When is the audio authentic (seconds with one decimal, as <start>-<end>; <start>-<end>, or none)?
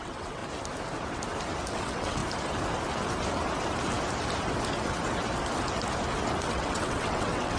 0.4-1.7; 2.2-6.4